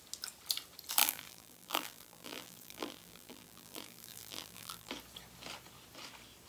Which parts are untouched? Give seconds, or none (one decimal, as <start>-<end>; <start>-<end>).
0.0-1.0; 4.9-6.5